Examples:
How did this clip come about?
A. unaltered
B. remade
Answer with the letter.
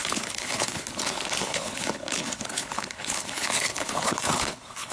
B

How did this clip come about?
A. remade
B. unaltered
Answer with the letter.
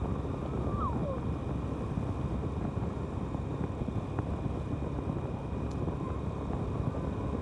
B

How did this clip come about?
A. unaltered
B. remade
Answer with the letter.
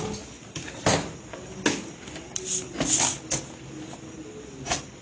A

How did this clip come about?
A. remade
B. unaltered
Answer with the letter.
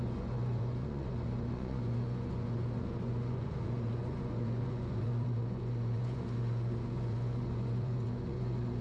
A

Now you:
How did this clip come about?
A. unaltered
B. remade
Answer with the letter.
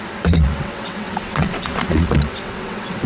B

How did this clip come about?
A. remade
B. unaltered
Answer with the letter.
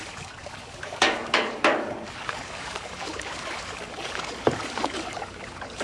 A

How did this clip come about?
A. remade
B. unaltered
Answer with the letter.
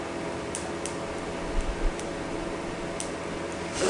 B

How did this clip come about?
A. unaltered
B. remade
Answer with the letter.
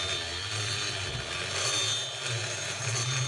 A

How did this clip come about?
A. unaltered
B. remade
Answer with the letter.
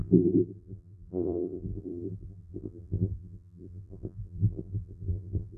B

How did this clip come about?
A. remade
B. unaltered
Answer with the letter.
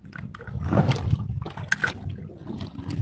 B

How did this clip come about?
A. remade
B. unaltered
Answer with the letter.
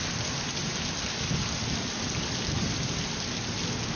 B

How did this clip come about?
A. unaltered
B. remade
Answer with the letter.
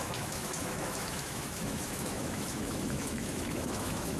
B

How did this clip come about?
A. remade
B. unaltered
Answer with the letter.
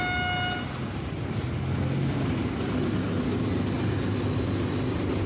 B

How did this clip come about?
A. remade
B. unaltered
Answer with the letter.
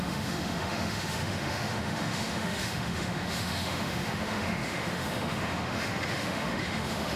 A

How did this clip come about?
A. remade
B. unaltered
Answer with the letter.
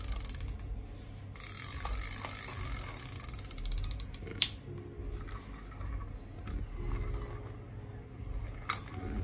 B